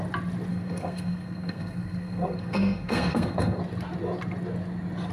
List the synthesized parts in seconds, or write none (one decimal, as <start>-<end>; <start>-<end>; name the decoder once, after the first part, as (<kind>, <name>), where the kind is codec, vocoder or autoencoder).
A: 0.5-3.6 (codec, SNAC)